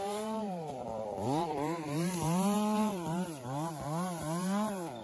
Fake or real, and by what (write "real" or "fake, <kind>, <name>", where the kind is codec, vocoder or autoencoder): fake, vocoder, BigVGAN v2